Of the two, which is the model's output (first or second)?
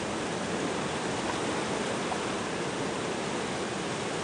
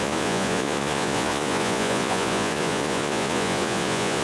second